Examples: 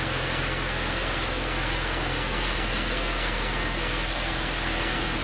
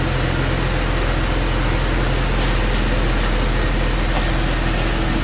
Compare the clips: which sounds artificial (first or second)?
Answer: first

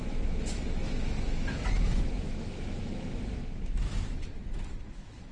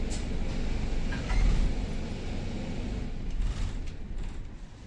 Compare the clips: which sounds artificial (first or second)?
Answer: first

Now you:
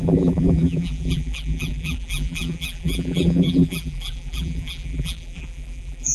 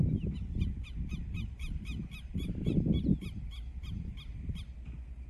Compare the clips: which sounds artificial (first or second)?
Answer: first